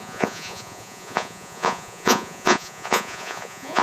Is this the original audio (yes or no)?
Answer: no